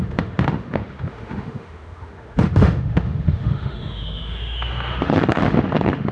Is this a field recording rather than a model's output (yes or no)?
no